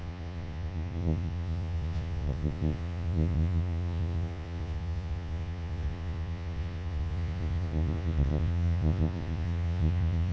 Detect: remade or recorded remade